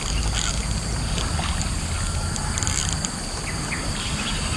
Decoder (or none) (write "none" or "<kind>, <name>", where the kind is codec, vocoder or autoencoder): none